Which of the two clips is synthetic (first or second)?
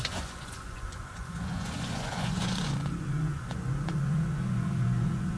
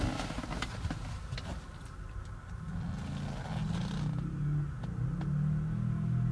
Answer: first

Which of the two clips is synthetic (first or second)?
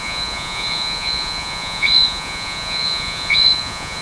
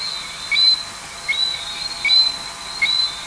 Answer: first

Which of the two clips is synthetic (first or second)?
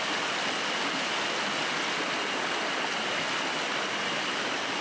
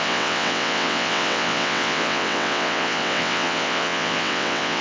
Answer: second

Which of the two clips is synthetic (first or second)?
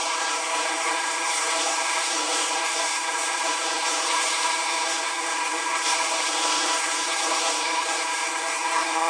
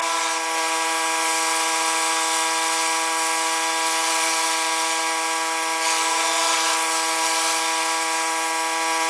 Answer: first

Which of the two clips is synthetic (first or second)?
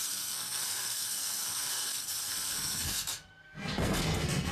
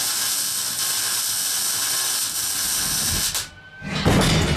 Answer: first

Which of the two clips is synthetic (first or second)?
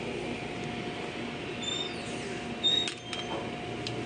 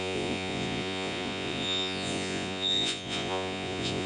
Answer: second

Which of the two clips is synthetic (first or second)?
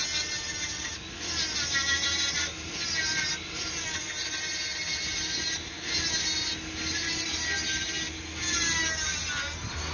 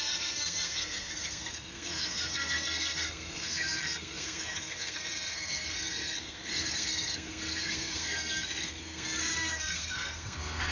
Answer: second